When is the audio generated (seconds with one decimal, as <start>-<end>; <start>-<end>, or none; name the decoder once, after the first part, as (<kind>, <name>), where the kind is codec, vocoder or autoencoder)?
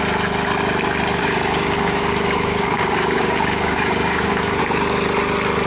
1.2-4.6 (codec, DAC)